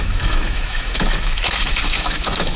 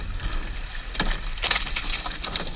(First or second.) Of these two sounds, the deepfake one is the first